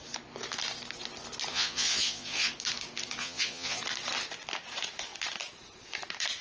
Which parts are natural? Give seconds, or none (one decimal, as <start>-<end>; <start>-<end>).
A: 0.0-1.5; 2.5-3.2; 3.8-6.4

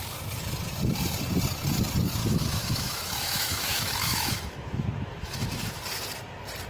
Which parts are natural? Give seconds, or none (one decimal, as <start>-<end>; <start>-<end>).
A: 0.0-2.2; 5.8-6.7

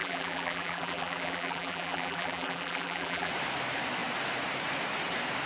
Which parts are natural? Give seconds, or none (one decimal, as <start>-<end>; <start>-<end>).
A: 3.3-5.5

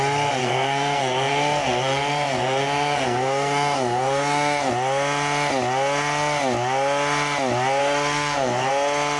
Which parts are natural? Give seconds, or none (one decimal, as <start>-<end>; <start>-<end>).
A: 0.0-0.4; 4.7-7.8; 8.7-9.2

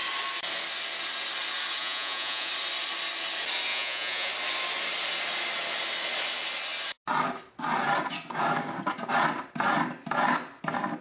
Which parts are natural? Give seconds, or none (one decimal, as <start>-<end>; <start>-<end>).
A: 0.0-1.8; 2.5-3.7; 4.3-11.0

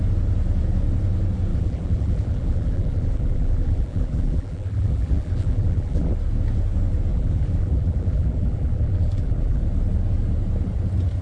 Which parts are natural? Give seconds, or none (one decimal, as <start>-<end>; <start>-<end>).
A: 0.0-1.5; 6.1-7.1; 9.6-11.2

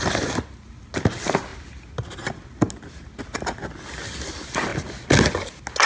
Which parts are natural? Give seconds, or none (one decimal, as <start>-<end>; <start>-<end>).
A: 0.0-5.9

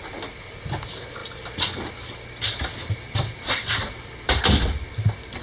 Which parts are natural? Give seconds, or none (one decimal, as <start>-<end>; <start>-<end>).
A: 0.0-1.2; 4.4-5.4